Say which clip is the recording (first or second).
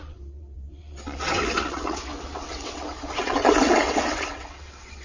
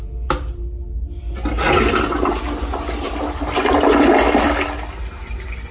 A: second